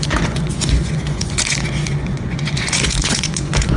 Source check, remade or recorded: remade